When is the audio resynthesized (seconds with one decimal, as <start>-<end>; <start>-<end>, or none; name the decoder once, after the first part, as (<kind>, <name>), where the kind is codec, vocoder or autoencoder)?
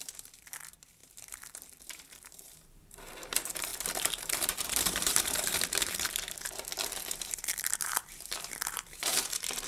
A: 0.0-9.7 (vocoder, BigVGAN v2)